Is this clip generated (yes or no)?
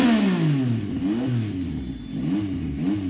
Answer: no